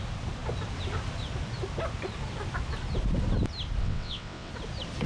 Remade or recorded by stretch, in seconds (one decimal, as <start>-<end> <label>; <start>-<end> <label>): 0.0-3.8 recorded; 3.8-4.5 remade; 4.5-5.1 recorded